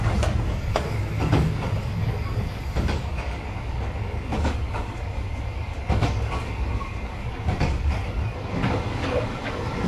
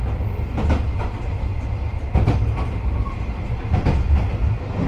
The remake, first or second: first